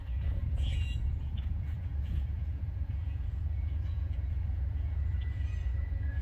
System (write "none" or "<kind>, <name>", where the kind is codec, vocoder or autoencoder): vocoder, Vocos